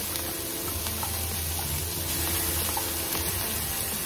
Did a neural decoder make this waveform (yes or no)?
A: no